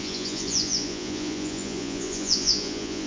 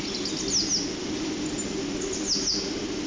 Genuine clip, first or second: second